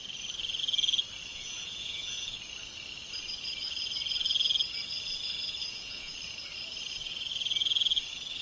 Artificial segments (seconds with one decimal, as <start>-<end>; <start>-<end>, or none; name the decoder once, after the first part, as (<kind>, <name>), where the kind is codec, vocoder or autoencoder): 1.3-2.4 (vocoder, Vocos); 5.6-6.1